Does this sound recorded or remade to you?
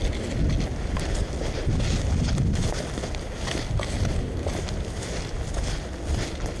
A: recorded